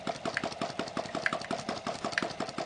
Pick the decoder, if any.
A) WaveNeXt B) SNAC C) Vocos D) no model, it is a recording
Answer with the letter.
D